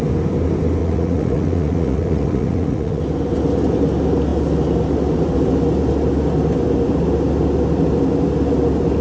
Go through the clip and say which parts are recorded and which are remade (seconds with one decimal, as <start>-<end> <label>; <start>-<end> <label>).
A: 0.0-0.8 recorded; 0.8-3.0 remade; 3.0-9.0 recorded